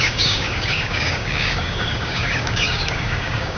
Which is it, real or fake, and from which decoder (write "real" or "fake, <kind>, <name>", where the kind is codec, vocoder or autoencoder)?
fake, codec, DAC